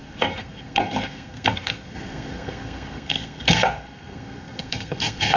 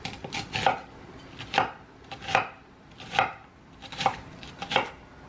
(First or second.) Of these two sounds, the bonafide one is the second